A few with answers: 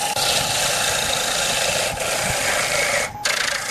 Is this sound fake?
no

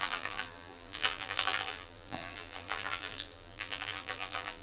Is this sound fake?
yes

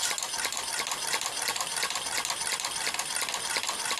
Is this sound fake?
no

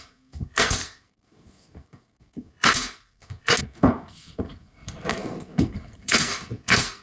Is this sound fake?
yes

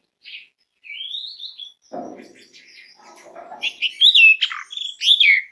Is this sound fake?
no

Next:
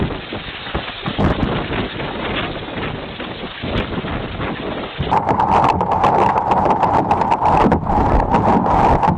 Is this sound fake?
no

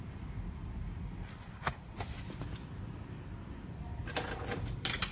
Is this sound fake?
no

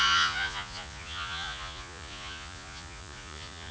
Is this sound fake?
yes